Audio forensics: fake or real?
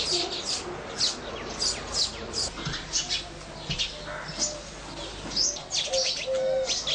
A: real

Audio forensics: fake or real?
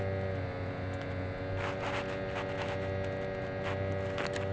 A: real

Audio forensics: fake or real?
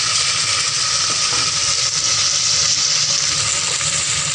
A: real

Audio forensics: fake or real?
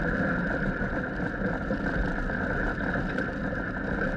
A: real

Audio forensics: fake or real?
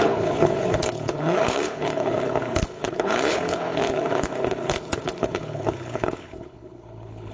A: fake